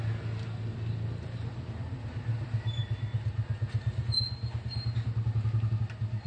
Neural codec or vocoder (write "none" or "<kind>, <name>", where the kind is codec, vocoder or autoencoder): none